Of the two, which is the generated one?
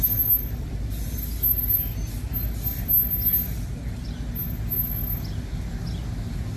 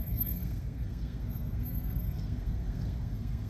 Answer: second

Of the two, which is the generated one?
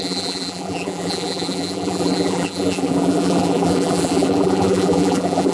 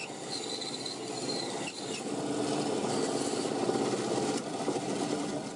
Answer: first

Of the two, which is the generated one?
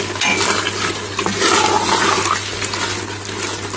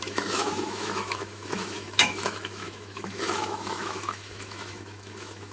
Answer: second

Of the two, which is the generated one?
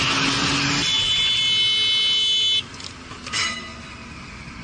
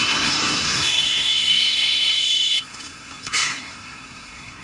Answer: second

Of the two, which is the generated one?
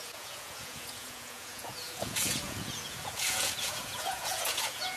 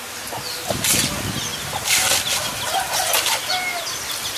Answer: first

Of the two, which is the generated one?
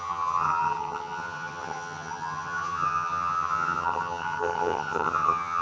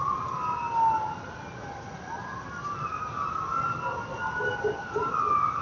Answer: first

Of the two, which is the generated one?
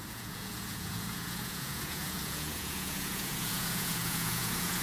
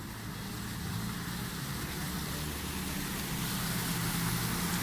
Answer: first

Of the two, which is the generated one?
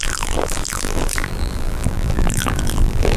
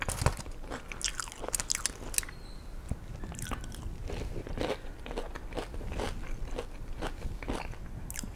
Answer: first